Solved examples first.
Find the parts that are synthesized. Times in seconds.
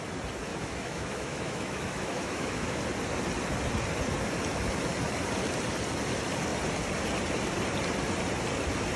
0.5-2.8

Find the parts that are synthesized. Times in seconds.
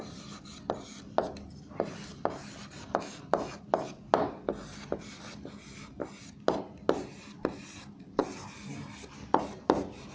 none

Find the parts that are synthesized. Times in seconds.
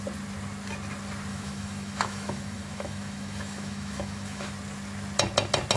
1.3-4.5